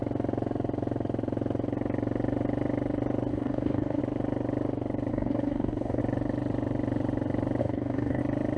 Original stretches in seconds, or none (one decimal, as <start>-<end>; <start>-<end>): 0.0-3.3; 4.0-5.1; 6.0-7.6; 8.2-8.6